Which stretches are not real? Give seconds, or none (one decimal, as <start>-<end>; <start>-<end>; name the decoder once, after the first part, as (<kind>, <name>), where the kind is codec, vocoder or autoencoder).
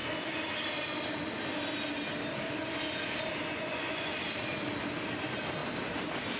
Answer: 3.5-4.1 (vocoder, Vocos)